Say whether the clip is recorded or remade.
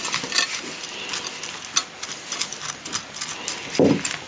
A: recorded